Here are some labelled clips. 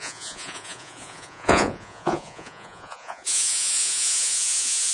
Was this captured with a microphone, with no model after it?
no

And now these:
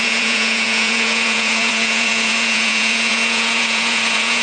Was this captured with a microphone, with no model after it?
no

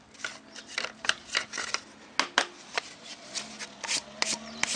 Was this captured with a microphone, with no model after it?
yes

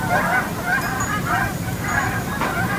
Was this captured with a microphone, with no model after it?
yes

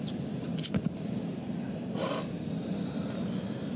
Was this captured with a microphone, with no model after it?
yes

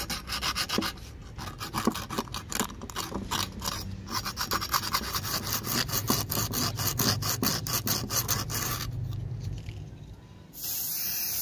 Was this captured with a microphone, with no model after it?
yes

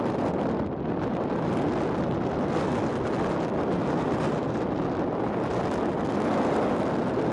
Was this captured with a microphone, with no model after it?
yes